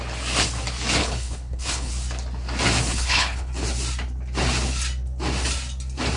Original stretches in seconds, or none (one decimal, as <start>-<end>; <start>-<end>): 0.0-1.0; 1.9-2.9; 3.5-6.2